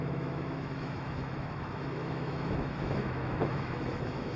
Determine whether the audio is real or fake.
fake